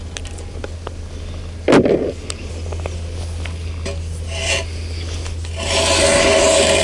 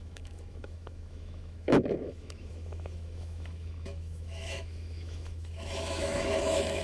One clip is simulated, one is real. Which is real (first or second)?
first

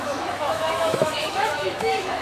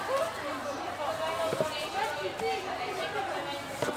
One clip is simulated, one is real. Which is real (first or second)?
second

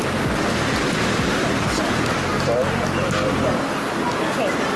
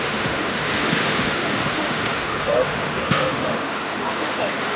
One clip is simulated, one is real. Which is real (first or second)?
first